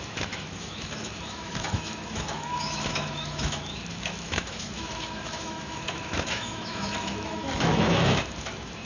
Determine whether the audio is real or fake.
fake